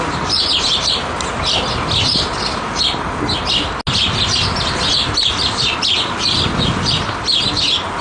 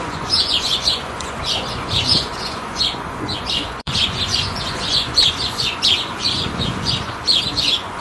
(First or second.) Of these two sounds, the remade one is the second